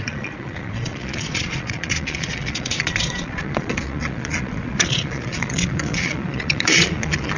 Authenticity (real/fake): fake